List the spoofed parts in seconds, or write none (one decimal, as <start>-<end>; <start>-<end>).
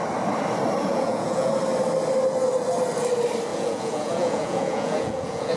0.9-1.5; 3.5-5.6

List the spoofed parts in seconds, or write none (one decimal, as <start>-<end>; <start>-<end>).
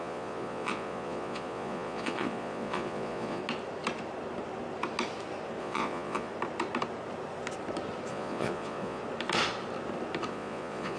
0.0-3.4; 5.6-6.3; 8.1-9.0; 10.3-11.0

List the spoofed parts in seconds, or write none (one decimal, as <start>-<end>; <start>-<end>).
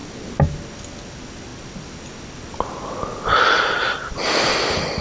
none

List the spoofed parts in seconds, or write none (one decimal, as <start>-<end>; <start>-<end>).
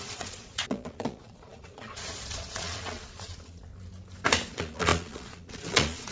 0.0-3.7; 4.5-6.1